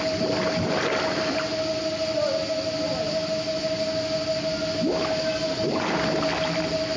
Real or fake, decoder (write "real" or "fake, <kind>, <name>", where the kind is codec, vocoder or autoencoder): real